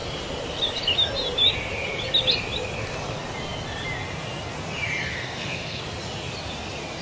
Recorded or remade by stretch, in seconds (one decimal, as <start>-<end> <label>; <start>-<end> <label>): 0.0-5.1 recorded; 5.1-5.8 remade; 5.8-7.0 recorded